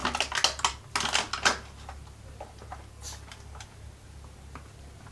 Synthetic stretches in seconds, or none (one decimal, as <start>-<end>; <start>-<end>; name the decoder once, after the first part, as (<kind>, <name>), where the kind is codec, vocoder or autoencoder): none